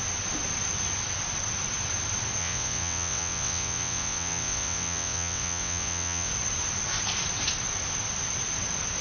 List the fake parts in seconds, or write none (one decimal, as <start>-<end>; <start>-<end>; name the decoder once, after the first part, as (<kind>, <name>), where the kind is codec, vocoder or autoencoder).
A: 2.4-6.3 (vocoder, WaveNeXt)